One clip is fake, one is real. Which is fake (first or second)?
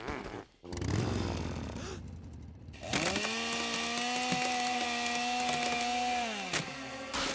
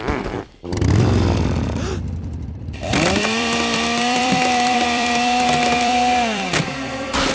second